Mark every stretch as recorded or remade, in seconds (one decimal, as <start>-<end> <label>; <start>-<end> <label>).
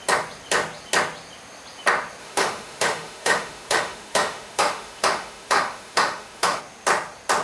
0.0-2.2 recorded; 2.2-6.6 remade; 6.6-7.4 recorded